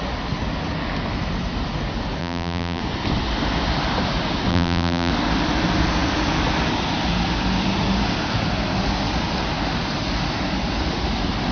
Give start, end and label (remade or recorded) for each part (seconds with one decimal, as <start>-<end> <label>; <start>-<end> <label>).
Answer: 0.0-2.2 recorded; 2.2-2.8 remade; 2.8-4.5 recorded; 4.5-5.1 remade; 5.1-11.5 recorded